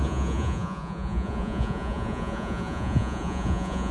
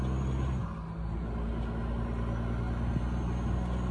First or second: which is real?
second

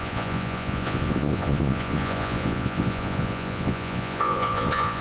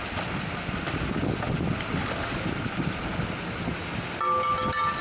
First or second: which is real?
second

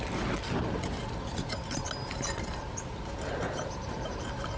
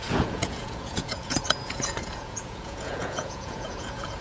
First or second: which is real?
first